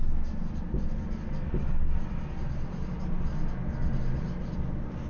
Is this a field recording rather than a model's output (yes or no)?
yes